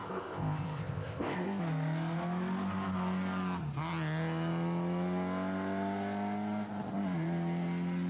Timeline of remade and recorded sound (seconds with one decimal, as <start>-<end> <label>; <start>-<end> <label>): 0.0-1.6 remade; 1.6-8.1 recorded

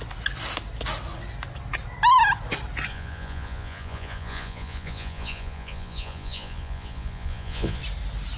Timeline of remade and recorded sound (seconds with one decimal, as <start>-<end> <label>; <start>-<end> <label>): 0.0-2.9 recorded; 2.9-7.8 remade; 7.8-8.4 recorded

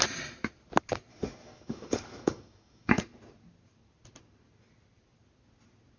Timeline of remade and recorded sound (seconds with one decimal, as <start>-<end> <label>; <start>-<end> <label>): 0.0-1.1 recorded; 1.1-2.9 remade; 2.9-6.0 recorded

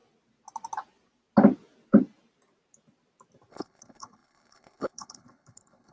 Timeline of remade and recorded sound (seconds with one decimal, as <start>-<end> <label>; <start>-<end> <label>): 0.0-3.5 recorded; 3.5-5.9 remade

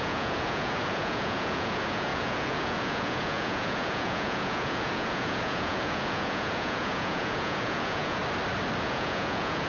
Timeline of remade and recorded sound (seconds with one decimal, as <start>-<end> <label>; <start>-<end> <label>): 0.0-8.2 remade; 8.2-8.8 recorded; 8.8-9.7 remade

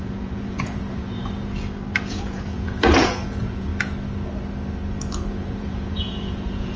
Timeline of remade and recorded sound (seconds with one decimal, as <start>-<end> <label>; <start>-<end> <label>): 0.0-1.3 remade; 1.3-2.0 recorded; 2.0-3.7 remade; 3.7-5.3 recorded; 5.3-6.8 remade

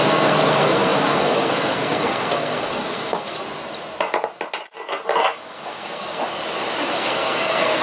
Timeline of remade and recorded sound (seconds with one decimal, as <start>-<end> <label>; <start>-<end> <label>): 0.0-3.4 remade; 3.4-5.2 recorded; 5.2-6.2 remade; 6.2-6.9 recorded; 6.9-7.8 remade

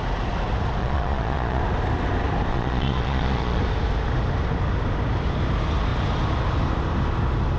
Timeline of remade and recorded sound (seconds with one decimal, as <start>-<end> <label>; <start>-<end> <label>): 0.0-0.8 recorded; 0.8-1.6 remade; 1.6-2.5 recorded; 2.5-3.6 remade; 3.6-7.6 recorded